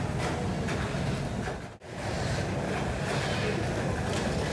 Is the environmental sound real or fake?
real